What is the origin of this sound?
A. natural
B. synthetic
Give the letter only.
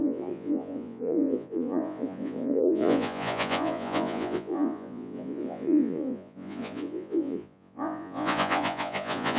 B